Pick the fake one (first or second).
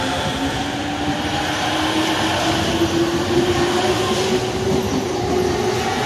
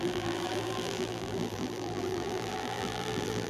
second